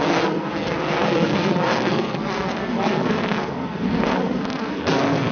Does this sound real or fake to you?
fake